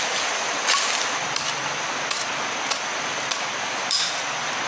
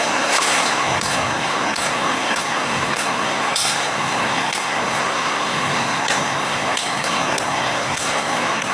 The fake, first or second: second